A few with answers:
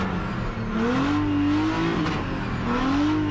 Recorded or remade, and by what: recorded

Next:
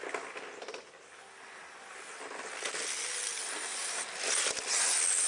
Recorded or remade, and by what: recorded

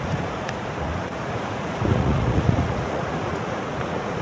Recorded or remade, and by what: remade, vocoder, Vocos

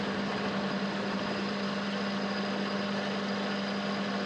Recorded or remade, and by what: recorded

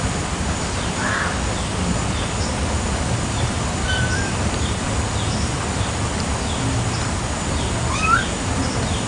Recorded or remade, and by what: recorded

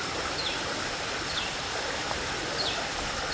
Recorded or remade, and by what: recorded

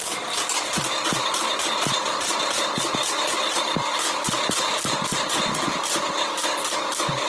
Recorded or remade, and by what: recorded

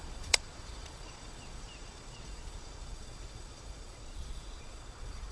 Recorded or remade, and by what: remade, vocoder, Vocos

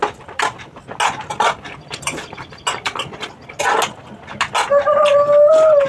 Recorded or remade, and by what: recorded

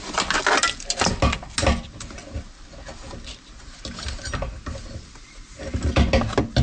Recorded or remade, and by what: recorded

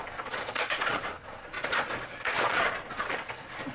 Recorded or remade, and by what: remade, vocoder, Vocos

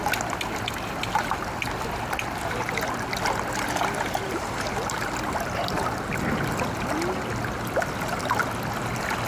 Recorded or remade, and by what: recorded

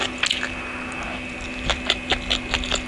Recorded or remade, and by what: recorded